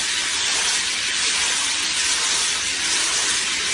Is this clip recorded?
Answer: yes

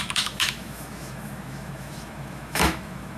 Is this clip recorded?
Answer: no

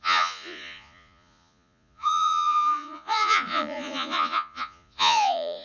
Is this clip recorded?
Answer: no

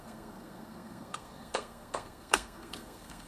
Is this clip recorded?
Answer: no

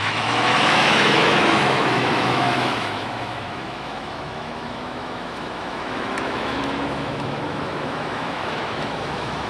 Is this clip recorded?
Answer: no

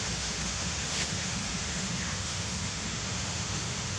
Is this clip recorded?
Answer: no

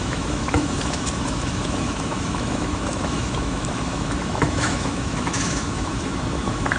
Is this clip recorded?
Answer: no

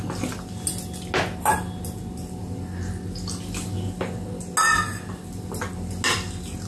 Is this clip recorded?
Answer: yes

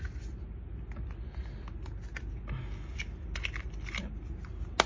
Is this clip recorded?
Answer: yes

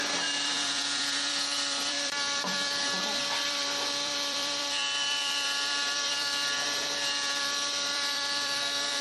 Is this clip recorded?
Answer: no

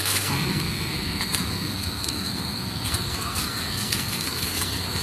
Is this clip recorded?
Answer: no